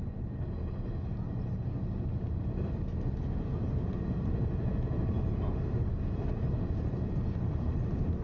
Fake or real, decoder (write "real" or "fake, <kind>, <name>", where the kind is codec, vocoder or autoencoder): real